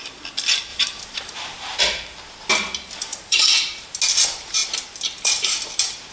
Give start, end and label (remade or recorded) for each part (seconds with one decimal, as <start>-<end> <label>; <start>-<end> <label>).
0.0-0.7 recorded; 0.7-1.8 remade; 1.8-3.1 recorded; 3.1-3.9 remade; 3.9-6.1 recorded